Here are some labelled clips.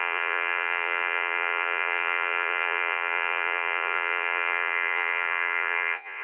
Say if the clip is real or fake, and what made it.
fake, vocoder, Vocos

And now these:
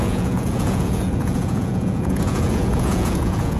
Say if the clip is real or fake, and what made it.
fake, vocoder, Vocos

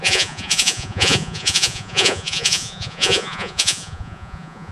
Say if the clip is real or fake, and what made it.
fake, vocoder, Vocos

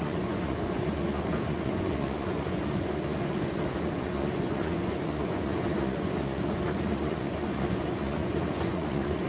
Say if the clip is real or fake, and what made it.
fake, vocoder, Vocos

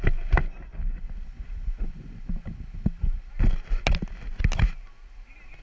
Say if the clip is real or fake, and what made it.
real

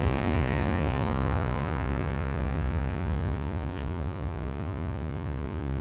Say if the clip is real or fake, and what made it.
fake, vocoder, Vocos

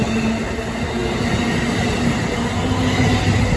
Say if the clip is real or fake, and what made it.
real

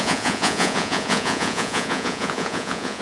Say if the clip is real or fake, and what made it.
fake, vocoder, Vocos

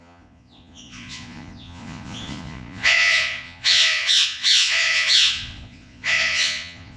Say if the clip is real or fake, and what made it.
fake, vocoder, Vocos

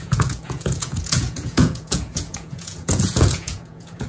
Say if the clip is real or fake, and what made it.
fake, vocoder, Vocos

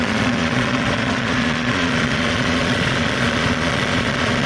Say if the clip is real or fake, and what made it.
fake, vocoder, Vocos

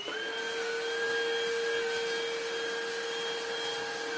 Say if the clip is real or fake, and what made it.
real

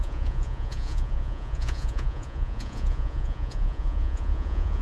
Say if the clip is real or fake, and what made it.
fake, vocoder, Vocos